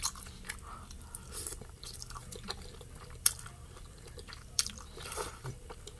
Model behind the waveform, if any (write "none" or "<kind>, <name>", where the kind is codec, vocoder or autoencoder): vocoder, BigVGAN v2